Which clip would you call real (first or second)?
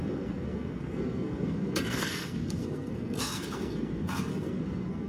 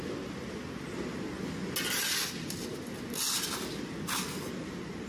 second